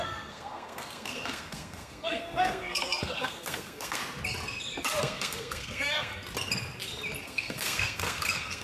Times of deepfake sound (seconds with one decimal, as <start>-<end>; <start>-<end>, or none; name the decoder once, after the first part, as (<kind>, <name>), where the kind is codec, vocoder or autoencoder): 0.0-4.0 (codec, SNAC); 5.0-6.1; 7.2-8.6